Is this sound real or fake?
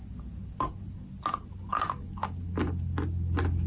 real